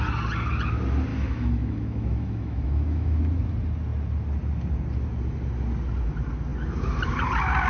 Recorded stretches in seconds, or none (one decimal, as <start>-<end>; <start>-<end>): 0.0-1.1; 3.2-7.7